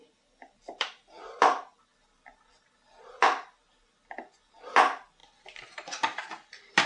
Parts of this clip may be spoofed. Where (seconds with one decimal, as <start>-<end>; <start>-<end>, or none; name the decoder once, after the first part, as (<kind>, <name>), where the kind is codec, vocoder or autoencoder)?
0.0-6.9 (vocoder, BigVGAN v2)

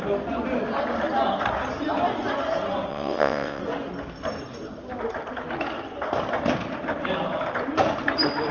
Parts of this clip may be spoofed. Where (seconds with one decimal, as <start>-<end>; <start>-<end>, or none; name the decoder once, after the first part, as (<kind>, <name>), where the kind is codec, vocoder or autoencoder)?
2.9-3.6 (vocoder, WaveNeXt)